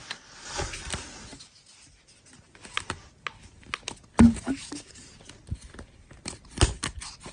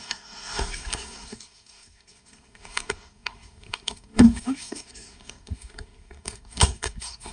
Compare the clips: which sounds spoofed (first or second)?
second